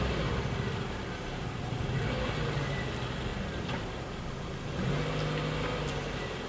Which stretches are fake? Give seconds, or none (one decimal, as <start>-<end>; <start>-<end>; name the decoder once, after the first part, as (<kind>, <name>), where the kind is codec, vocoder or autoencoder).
none

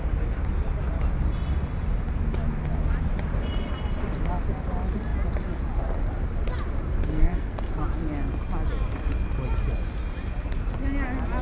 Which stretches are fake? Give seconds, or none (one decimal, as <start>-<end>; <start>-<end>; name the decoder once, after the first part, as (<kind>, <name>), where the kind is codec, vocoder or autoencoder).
7.0-7.7 (codec, SNAC)

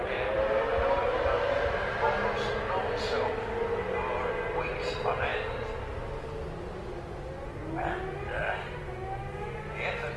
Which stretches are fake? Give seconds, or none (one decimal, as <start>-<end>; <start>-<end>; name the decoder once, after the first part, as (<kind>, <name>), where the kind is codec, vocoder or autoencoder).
none

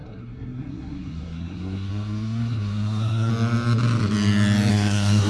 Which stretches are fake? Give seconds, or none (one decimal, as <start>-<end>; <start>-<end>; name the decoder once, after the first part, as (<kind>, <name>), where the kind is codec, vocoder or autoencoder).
0.0-3.3 (codec, SNAC); 4.7-5.3

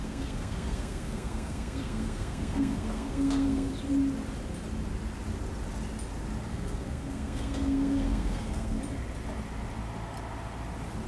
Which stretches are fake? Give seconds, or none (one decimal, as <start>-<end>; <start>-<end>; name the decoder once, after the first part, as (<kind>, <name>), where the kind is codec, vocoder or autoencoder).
0.0-3.7 (codec, SNAC); 6.5-8.8